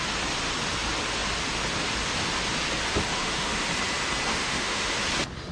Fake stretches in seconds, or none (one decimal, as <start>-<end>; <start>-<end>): 3.1-3.7; 4.3-4.9